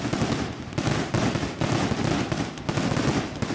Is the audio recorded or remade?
recorded